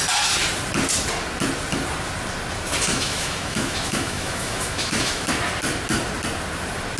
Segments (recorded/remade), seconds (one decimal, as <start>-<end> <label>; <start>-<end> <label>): 0.0-2.9 recorded; 2.9-5.3 remade; 5.3-7.0 recorded